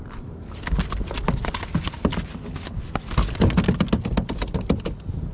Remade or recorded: recorded